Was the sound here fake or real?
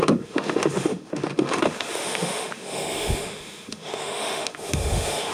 fake